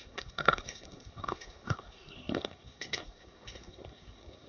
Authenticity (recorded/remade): remade